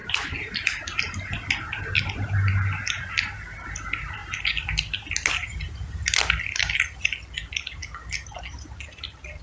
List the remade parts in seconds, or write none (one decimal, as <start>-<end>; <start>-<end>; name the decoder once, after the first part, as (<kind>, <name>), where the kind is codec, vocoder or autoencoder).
none